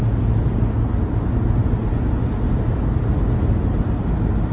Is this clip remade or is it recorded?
recorded